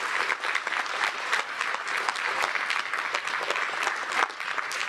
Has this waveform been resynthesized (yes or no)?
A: no